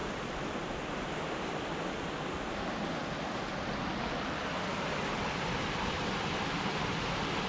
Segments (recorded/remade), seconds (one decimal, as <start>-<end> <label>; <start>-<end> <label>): 0.0-7.5 recorded

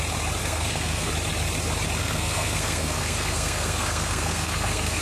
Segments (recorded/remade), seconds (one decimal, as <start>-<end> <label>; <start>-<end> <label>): 0.0-0.4 recorded; 0.4-1.1 remade; 1.1-2.0 recorded; 2.0-5.0 remade

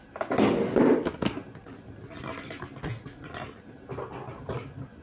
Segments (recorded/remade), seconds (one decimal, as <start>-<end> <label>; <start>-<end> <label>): 0.0-5.0 recorded

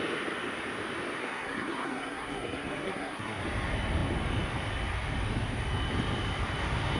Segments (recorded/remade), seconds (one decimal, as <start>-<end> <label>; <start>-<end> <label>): 0.0-1.2 recorded; 1.2-3.4 remade; 3.4-7.0 recorded

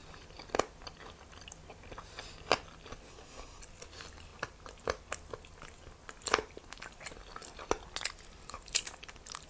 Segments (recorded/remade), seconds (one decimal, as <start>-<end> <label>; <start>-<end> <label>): 0.0-3.1 recorded; 3.1-3.6 remade; 3.6-9.5 recorded

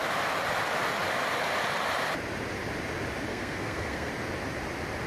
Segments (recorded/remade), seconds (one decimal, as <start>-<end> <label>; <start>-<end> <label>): 0.0-3.3 recorded; 3.3-4.1 remade; 4.1-5.1 recorded

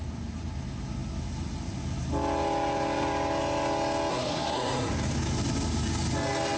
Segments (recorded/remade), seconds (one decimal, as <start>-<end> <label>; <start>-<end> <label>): 0.0-4.1 recorded; 4.1-4.9 remade; 4.9-6.6 recorded

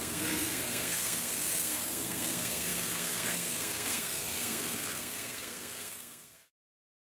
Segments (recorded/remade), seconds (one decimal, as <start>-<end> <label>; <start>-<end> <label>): 0.0-7.2 remade